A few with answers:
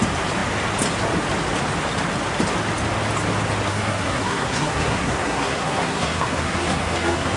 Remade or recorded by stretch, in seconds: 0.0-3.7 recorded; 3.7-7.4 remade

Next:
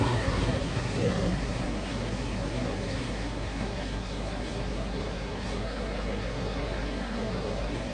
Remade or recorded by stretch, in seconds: 0.0-7.9 remade

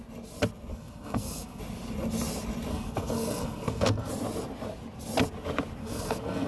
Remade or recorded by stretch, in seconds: 0.0-0.7 recorded; 0.7-1.6 remade; 1.6-2.7 recorded; 2.7-4.1 remade; 4.1-5.8 recorded; 5.8-6.5 remade